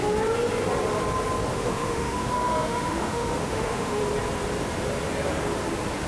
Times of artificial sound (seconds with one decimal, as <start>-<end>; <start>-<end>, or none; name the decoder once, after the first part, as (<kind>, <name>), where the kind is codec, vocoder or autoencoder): 1.5-4.0 (autoencoder, DAC-VAE)